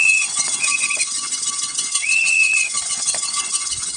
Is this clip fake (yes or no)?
yes